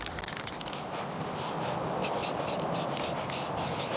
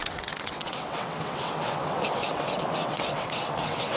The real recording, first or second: first